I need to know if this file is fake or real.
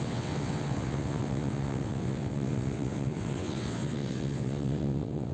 fake